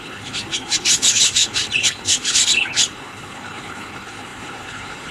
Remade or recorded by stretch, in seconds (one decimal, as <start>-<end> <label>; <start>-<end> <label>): 0.0-5.1 remade